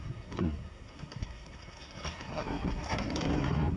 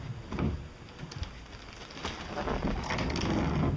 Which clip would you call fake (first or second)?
first